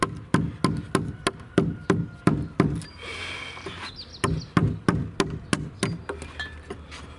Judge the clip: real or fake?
real